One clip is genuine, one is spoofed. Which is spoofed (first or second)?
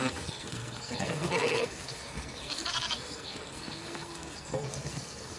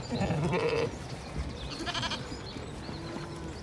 first